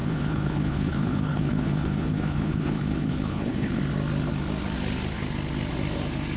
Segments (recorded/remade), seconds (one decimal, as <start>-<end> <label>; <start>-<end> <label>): 0.0-3.8 remade; 3.8-6.4 recorded